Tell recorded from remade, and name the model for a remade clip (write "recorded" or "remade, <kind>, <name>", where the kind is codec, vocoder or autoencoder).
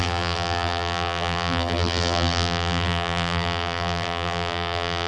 remade, vocoder, BigVGAN v2